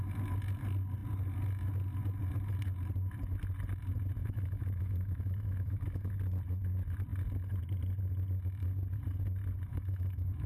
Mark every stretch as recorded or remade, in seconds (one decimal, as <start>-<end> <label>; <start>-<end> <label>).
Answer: 0.0-4.2 recorded; 4.2-6.1 remade; 6.1-9.7 recorded; 9.7-10.5 remade